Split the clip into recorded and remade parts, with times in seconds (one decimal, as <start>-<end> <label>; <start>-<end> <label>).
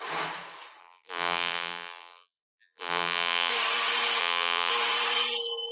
0.0-0.8 recorded; 0.8-3.5 remade; 3.5-4.2 recorded; 4.2-4.7 remade; 4.7-5.7 recorded